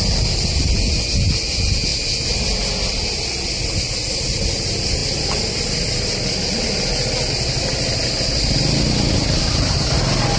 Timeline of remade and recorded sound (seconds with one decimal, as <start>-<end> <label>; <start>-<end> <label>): 0.0-10.4 recorded